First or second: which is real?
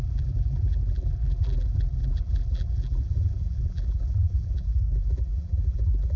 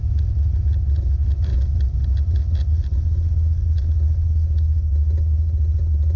second